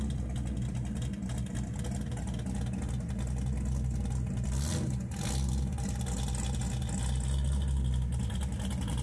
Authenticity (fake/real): real